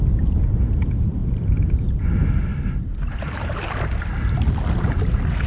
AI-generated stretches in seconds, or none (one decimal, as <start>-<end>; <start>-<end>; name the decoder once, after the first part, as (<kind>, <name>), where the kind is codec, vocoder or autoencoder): none